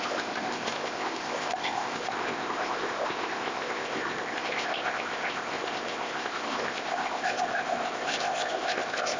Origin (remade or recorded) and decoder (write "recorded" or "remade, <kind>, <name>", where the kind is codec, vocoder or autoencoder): remade, codec, ZipCodec